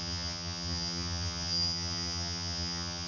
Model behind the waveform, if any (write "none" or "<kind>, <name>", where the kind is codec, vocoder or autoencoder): vocoder, HiFi-GAN